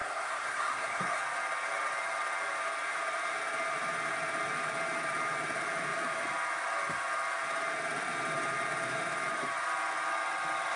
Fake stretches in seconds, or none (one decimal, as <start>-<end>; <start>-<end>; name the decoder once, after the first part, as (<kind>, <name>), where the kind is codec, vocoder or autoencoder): 0.0-1.2 (codec, SNAC)